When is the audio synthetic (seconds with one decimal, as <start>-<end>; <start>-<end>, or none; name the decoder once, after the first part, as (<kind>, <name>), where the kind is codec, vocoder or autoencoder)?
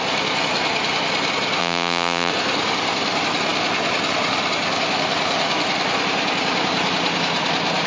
1.6-2.3 (vocoder, BigVGAN v2)